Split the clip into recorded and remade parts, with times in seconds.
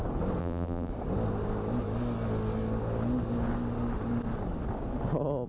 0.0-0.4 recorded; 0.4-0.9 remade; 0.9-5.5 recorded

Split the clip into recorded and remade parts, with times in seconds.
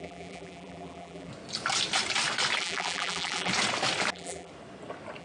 0.0-1.3 remade; 1.3-2.6 recorded; 2.6-3.5 remade; 3.5-4.1 recorded; 4.1-4.5 remade; 4.5-5.2 recorded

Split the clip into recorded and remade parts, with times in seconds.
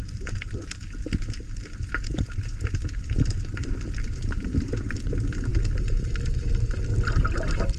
0.0-3.6 recorded; 3.6-4.7 remade; 4.7-7.8 recorded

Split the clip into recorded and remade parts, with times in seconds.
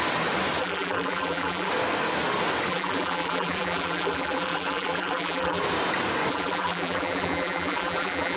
0.0-0.6 recorded; 0.6-1.7 remade; 1.7-2.7 recorded; 2.7-5.6 remade; 5.6-6.3 recorded; 6.3-8.4 remade